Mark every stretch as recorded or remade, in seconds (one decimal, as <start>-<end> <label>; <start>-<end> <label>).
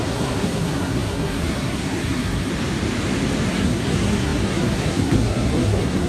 0.0-2.5 remade; 2.5-3.5 recorded; 3.5-6.1 remade